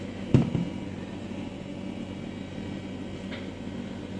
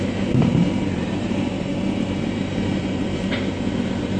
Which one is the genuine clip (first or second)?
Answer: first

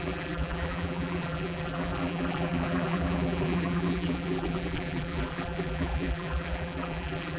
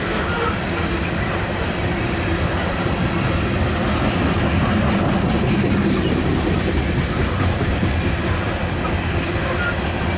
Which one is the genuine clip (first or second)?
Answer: second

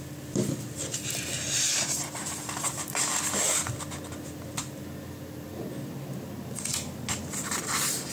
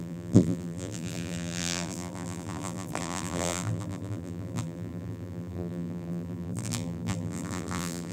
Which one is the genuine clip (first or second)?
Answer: first